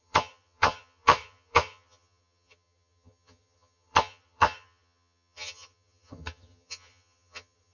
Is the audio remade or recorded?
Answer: remade